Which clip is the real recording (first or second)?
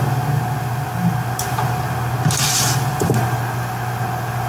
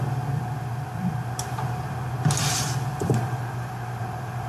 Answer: first